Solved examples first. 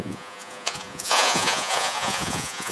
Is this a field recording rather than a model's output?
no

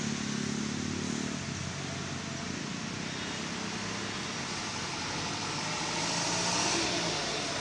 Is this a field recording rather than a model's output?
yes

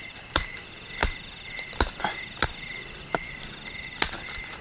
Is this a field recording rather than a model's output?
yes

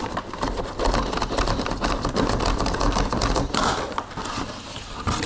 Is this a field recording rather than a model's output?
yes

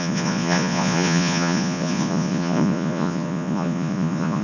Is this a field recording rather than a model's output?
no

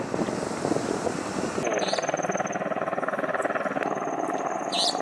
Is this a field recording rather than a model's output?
yes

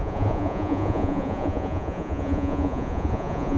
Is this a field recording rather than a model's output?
no